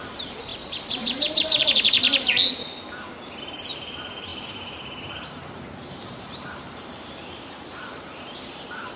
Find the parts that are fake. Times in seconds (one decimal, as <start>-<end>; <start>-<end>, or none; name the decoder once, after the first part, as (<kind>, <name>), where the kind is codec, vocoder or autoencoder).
0.0-2.0 (vocoder, BigVGAN v2); 3.4-9.0